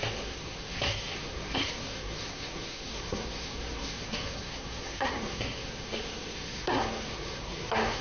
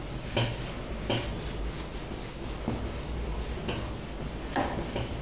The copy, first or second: first